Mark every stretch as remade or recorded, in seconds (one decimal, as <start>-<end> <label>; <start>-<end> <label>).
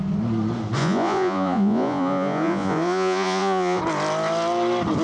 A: 0.0-0.8 recorded; 0.8-3.8 remade; 3.8-5.0 recorded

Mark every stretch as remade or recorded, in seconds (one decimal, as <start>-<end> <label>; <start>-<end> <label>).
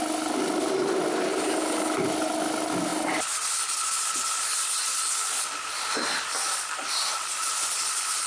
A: 0.0-8.3 recorded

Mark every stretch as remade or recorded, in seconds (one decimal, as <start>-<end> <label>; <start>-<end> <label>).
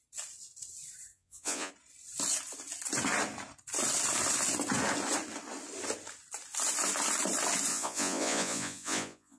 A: 0.0-1.1 recorded; 1.1-1.7 remade; 1.7-7.7 recorded; 7.7-9.4 remade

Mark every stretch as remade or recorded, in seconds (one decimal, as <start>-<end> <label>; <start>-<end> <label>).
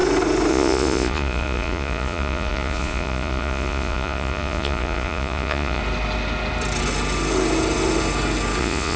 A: 0.0-0.5 recorded; 0.5-5.8 remade; 5.8-8.6 recorded; 8.6-9.0 remade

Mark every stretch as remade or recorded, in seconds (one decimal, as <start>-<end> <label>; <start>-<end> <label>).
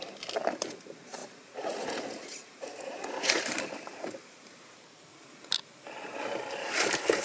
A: 0.0-1.2 recorded; 1.2-3.4 remade; 3.4-7.2 recorded